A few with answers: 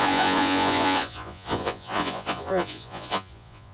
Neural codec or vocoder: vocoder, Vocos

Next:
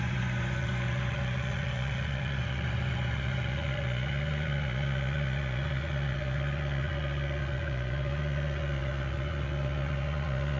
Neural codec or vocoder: vocoder, Vocos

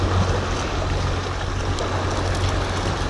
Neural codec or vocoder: none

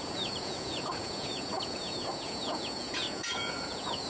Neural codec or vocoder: vocoder, Vocos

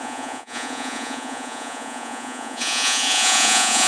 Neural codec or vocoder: vocoder, Vocos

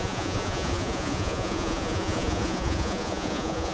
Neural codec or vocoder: vocoder, Vocos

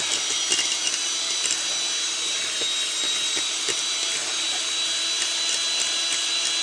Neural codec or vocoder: none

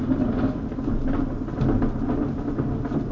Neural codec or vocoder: none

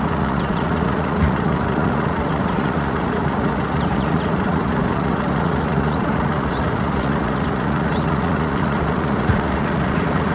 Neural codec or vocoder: vocoder, Vocos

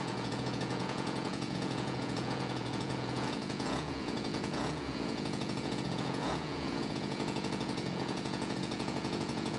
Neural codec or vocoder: vocoder, Vocos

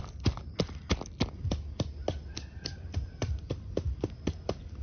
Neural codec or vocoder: none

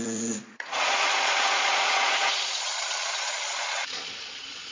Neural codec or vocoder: vocoder, Vocos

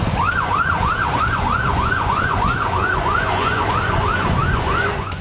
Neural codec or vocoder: vocoder, Vocos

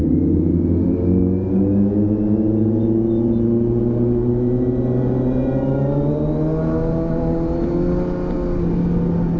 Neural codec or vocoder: none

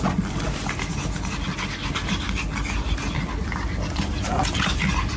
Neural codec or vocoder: none